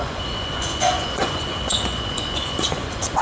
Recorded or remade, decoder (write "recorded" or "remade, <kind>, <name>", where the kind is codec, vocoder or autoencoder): remade, vocoder, Vocos